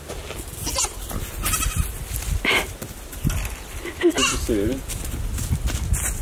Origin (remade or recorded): recorded